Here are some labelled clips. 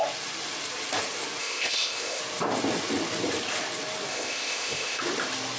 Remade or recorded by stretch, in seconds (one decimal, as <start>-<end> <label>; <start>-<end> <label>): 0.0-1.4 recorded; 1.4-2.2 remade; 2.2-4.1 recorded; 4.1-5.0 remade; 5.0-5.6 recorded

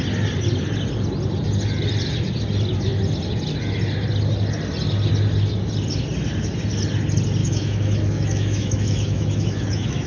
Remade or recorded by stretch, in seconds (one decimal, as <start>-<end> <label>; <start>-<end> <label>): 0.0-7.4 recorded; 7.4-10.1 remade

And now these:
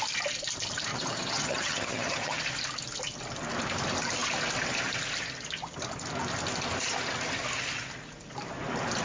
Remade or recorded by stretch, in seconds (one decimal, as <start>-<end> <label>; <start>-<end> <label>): 0.0-0.9 recorded; 0.9-2.4 remade; 2.4-9.0 recorded

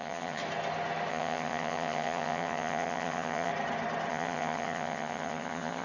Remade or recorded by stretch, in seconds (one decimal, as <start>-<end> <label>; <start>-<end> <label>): 0.0-0.4 remade; 0.4-1.1 recorded; 1.1-3.5 remade; 3.5-4.1 recorded; 4.1-5.8 remade

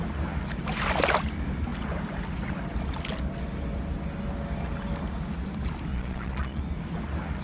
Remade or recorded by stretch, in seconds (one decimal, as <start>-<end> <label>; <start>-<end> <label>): 0.0-5.9 recorded; 5.9-6.6 remade; 6.6-7.4 recorded

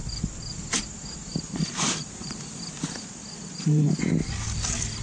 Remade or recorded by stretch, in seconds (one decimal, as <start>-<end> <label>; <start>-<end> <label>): 0.0-1.3 recorded; 1.3-4.3 remade; 4.3-5.0 recorded

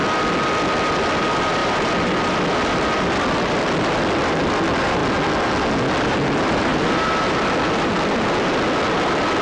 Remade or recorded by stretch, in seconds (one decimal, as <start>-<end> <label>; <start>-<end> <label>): 0.0-0.9 recorded; 0.9-5.0 remade; 5.0-6.0 recorded; 6.0-9.4 remade